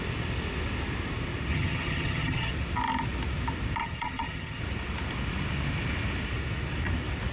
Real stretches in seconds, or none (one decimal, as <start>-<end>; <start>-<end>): 0.0-1.5; 2.5-3.8; 4.6-7.3